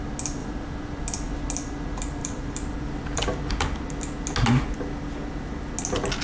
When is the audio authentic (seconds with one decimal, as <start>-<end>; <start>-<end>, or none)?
0.0-0.4; 1.0-2.2; 3.5-6.2